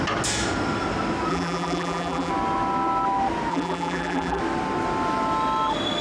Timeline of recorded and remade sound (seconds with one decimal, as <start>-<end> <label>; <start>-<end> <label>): 0.0-1.3 recorded; 1.3-2.3 remade; 2.3-3.5 recorded; 3.5-4.4 remade; 4.4-6.0 recorded